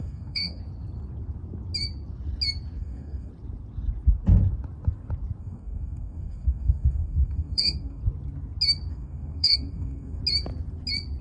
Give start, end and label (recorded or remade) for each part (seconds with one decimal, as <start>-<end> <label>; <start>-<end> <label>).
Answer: 0.0-0.6 remade; 0.6-2.8 recorded; 2.8-3.3 remade; 3.3-5.4 recorded; 5.4-8.0 remade; 8.0-8.9 recorded; 8.9-10.2 remade; 10.2-11.2 recorded